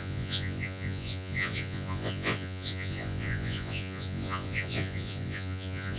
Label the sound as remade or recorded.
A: remade